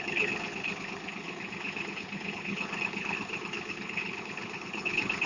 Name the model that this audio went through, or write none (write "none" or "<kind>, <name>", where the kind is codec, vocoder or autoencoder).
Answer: codec, HILCodec